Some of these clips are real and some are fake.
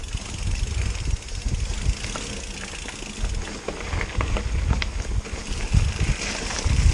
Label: real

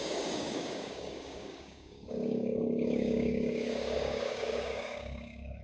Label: fake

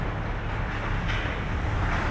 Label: real